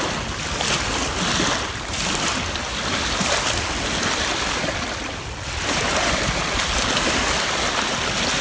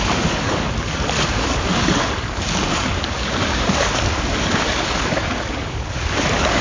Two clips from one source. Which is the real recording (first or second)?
first